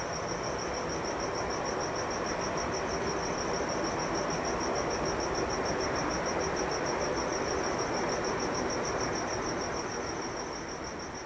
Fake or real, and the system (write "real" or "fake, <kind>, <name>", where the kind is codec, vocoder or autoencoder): real